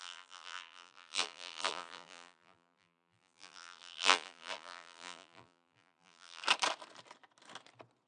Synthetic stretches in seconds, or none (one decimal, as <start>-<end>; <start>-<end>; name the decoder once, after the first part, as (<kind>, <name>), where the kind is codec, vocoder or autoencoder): 0.0-6.4 (vocoder, BigVGAN v2)